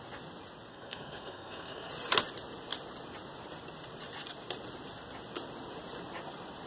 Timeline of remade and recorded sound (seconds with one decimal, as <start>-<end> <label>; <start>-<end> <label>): 0.0-0.7 recorded; 0.7-1.9 remade; 1.9-6.7 recorded